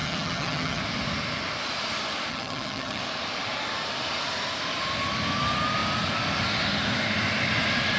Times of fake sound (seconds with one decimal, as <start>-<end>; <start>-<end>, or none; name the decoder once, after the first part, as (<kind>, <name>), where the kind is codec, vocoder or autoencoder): 0.0-0.8 (vocoder, HiFi-GAN); 2.3-3.0